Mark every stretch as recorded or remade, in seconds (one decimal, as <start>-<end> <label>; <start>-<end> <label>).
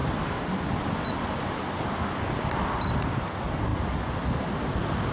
0.0-5.1 recorded